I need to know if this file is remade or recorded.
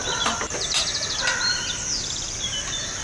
recorded